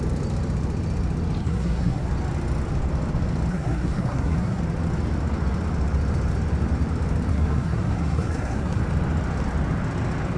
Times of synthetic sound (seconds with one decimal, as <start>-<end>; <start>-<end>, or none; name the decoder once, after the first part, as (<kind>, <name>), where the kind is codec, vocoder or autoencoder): 1.4-2.1 (codec, SNAC); 3.5-4.6; 7.3-8.8